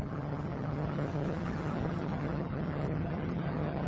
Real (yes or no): no